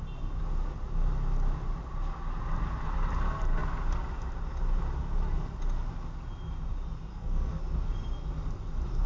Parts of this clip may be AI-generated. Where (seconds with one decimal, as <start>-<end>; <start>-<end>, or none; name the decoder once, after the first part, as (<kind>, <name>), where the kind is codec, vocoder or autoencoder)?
7.1-7.6 (codec, SNAC)